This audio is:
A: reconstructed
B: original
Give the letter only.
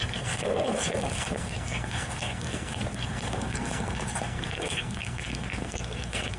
A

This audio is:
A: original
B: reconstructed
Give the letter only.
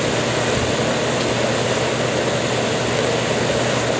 A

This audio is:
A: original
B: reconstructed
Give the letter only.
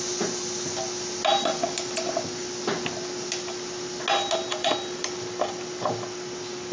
A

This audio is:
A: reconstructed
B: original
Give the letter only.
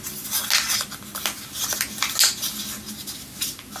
B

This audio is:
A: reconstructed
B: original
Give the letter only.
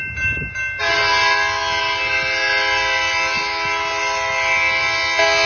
B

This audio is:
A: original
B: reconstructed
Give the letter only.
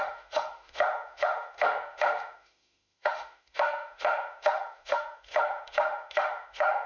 B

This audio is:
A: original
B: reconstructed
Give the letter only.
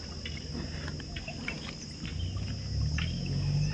A